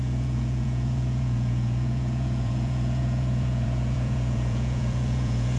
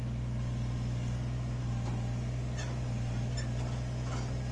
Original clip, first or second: second